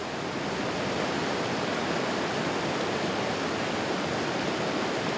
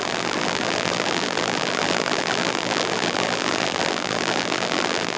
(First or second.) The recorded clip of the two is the first